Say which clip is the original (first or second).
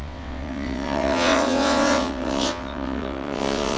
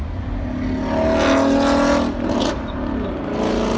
second